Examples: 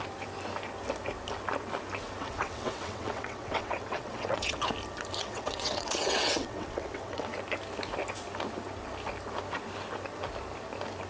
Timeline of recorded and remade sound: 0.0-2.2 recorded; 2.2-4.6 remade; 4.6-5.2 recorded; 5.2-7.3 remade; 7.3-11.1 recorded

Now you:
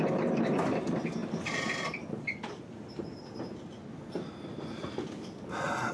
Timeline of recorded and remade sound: 0.0-5.9 recorded

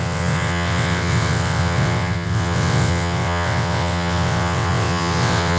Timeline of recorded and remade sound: 0.0-5.6 remade

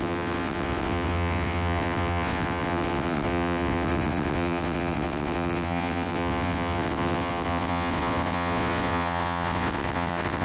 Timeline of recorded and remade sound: 0.0-10.4 remade

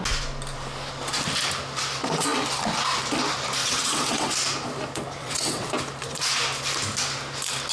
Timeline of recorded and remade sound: 0.0-3.6 recorded; 3.6-4.3 remade; 4.3-5.2 recorded; 5.2-5.7 remade; 5.7-7.7 recorded